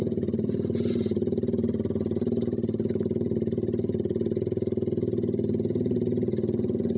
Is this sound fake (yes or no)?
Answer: no